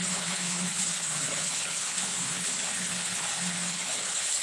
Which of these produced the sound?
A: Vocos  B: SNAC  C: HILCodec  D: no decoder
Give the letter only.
C